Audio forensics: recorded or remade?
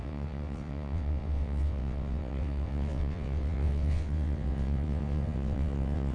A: remade